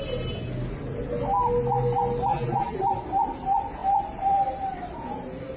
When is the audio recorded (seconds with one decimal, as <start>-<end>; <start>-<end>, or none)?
0.0-2.3; 2.8-5.6